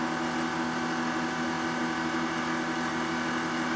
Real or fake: real